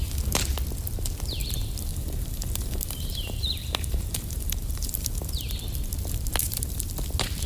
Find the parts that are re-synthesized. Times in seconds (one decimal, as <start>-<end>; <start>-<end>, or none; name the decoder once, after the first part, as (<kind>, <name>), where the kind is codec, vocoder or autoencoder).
1.9-4.9 (vocoder, BigVGAN v2)